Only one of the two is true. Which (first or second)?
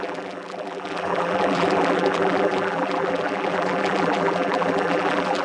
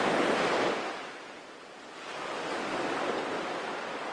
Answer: second